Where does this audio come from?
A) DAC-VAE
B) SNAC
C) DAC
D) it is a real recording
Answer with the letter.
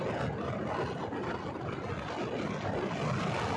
D